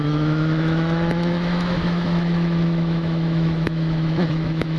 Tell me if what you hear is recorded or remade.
remade